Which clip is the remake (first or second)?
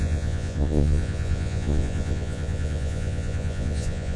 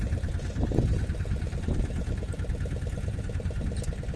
first